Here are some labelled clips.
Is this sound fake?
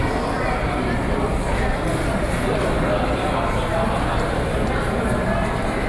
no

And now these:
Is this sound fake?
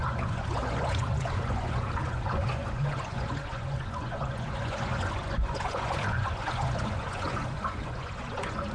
yes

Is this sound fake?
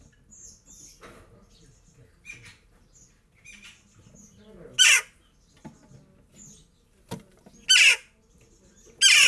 no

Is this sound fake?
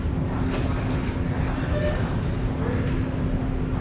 no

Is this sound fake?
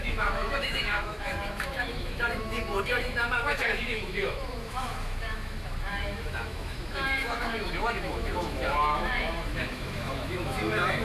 yes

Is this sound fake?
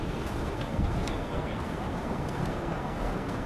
yes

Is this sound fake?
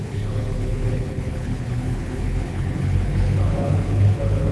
yes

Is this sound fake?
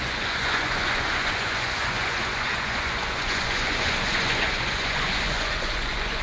yes